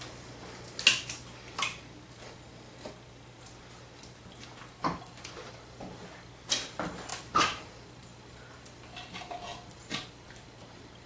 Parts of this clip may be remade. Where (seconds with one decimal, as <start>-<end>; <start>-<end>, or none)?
5.4-6.0; 7.1-7.7; 9.5-11.1